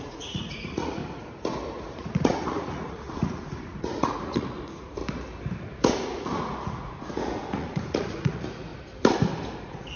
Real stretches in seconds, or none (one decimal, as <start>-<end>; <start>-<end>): 1.0-1.9; 5.0-5.6; 8.7-9.6